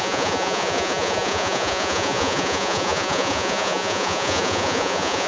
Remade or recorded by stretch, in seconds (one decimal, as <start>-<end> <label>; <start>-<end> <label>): 0.0-5.3 remade